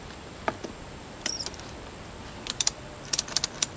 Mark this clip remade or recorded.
recorded